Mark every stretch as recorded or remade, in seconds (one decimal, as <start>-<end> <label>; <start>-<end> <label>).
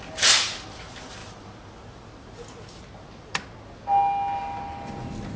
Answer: 0.0-5.4 recorded